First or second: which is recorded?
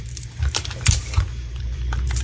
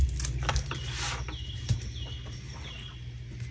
second